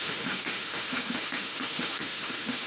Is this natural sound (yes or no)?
no